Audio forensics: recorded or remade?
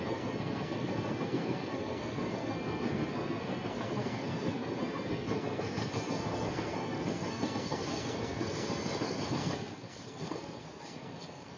remade